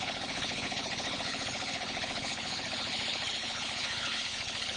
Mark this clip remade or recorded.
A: remade